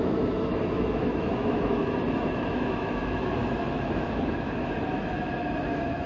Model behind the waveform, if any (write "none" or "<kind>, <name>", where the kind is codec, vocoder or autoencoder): autoencoder, DAC-VAE